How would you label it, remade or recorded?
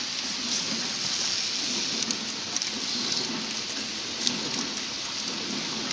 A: recorded